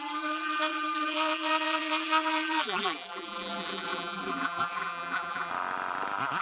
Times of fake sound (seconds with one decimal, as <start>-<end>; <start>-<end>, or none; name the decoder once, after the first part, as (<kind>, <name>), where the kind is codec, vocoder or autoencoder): 0.0-5.5 (vocoder, BigVGAN v2)